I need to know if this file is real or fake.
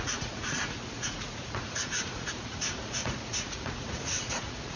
fake